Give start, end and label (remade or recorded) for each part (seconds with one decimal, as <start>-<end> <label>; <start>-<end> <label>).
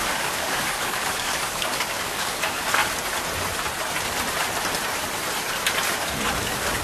0.0-2.8 remade; 2.8-5.9 recorded; 5.9-6.8 remade